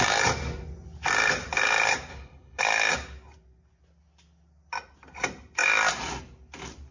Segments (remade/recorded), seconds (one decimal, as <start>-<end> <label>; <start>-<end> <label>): 0.0-2.1 recorded; 2.1-2.6 remade; 2.6-6.9 recorded